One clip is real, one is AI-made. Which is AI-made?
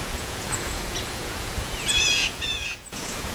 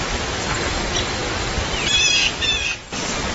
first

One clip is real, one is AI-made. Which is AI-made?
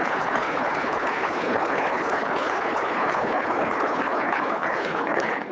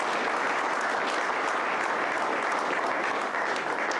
first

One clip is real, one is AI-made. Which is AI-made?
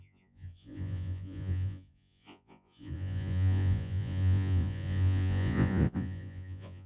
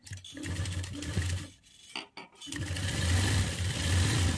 first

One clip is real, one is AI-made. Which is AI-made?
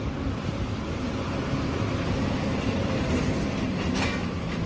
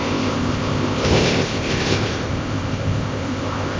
second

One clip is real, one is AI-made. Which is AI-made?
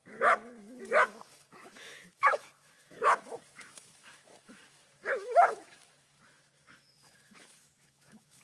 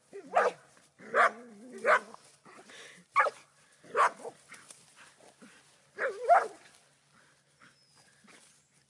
first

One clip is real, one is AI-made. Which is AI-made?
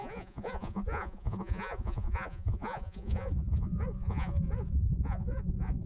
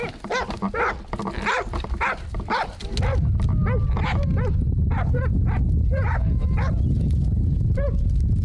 first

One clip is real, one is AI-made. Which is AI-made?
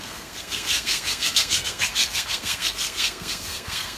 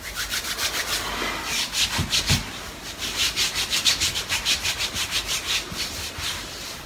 first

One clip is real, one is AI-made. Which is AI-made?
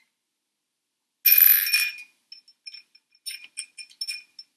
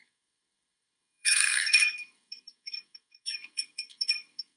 second